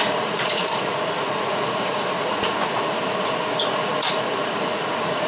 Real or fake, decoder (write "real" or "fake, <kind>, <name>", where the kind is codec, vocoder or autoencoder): fake, vocoder, Vocos